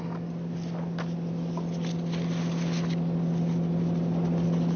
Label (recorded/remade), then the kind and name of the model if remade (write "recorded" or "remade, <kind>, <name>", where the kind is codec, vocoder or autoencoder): recorded